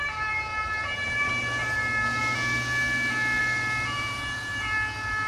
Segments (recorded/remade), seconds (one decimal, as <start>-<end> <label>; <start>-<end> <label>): 0.0-2.2 remade; 2.2-3.4 recorded; 3.4-5.3 remade